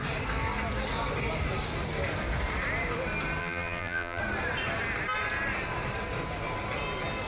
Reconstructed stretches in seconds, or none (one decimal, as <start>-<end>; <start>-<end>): 3.4-4.2